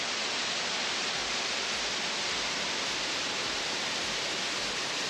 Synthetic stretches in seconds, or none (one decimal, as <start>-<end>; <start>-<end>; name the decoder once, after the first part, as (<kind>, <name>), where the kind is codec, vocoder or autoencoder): 1.2-4.3 (vocoder, BigVGAN v2)